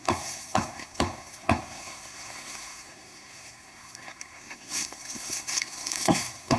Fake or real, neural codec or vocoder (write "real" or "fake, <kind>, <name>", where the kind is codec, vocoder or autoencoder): fake, codec, SNAC